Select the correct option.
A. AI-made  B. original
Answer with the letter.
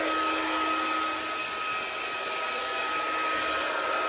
B